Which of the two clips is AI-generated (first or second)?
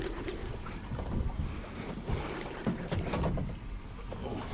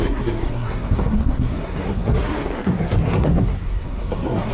second